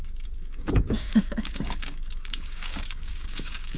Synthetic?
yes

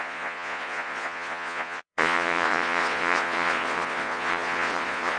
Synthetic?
yes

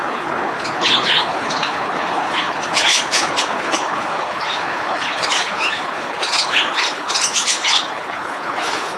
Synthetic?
yes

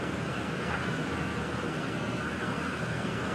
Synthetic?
yes